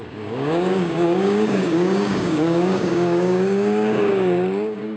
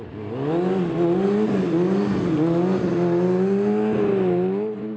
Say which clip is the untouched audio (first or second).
second